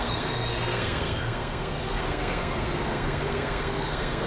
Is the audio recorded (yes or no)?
no